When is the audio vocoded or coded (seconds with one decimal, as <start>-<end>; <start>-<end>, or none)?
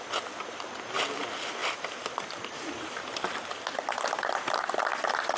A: none